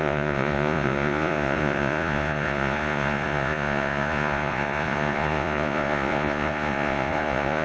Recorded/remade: remade